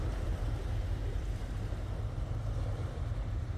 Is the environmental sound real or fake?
fake